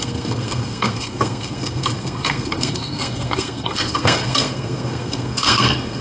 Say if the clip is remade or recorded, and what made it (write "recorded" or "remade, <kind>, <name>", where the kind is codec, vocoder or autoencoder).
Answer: remade, codec, SNAC